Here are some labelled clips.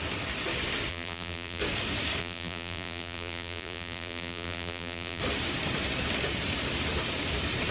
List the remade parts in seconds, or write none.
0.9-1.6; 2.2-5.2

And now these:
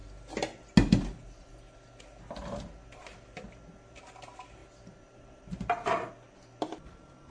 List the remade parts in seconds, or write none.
2.4-3.0; 4.6-6.1